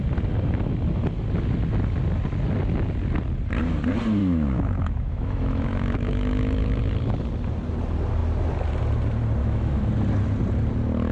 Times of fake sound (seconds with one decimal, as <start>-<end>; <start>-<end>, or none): 4.2-6.8; 9.4-9.9